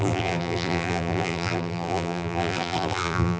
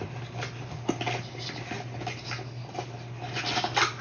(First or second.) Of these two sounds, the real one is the second